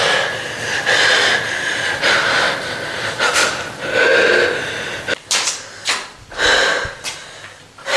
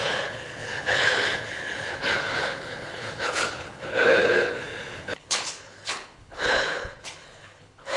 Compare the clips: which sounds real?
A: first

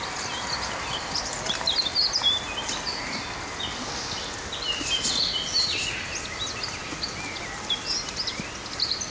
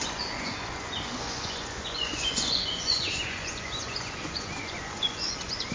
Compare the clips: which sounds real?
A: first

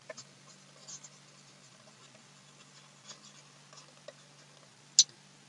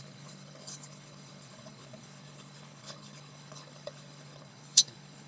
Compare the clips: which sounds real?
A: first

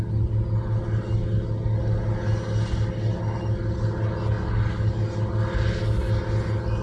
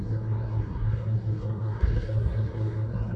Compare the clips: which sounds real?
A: first